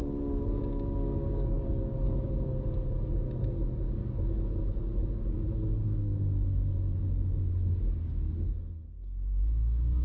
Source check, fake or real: fake